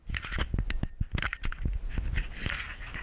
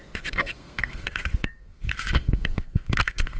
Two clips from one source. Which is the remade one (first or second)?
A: second